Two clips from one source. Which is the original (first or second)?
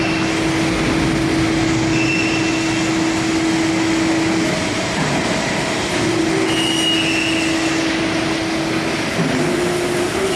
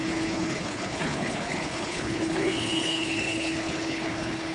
first